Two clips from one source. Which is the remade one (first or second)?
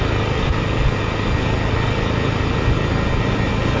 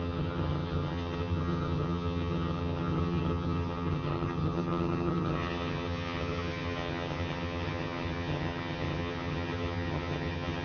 second